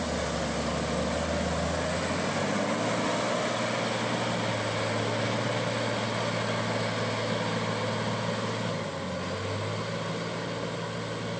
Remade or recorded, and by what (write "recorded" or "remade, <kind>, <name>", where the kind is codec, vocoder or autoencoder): recorded